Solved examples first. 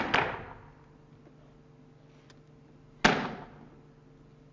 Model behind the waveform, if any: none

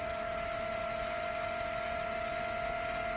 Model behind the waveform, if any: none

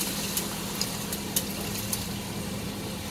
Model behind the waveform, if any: none